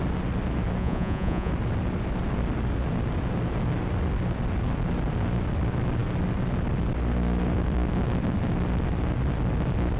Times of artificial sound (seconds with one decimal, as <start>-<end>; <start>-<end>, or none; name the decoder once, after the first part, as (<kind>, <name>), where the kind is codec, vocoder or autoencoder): 0.8-1.5 (vocoder, Vocos)